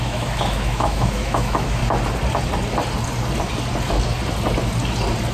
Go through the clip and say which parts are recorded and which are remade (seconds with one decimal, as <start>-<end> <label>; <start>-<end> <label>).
0.0-1.8 remade; 1.8-5.3 recorded